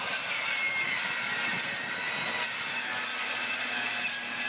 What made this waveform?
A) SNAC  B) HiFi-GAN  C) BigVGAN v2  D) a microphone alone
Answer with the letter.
D